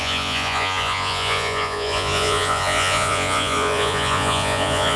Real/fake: fake